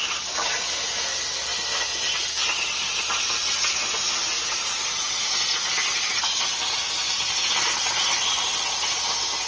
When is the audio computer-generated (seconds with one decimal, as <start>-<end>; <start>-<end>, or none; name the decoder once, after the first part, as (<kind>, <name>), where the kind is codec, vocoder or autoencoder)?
none